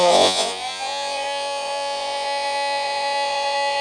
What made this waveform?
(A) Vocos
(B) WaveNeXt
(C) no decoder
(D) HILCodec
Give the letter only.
A